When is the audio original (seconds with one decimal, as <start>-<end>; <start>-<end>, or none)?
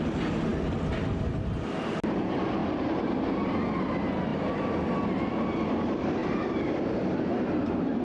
0.0-6.2; 7.2-8.0